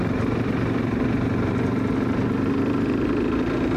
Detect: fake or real real